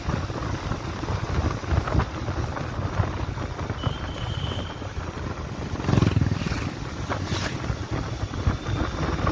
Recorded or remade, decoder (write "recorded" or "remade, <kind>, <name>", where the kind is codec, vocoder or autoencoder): recorded